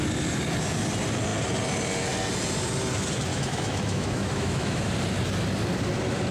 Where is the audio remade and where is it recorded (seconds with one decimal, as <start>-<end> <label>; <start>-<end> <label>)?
0.0-3.3 recorded; 3.3-4.9 remade; 4.9-6.3 recorded